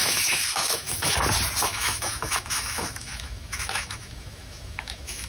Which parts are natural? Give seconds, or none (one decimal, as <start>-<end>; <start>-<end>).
1.2-1.7